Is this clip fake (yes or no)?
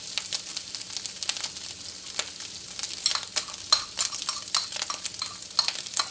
no